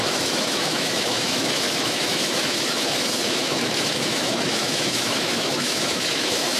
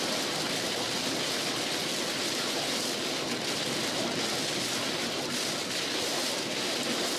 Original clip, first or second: second